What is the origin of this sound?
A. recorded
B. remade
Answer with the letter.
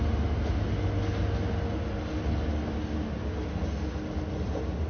A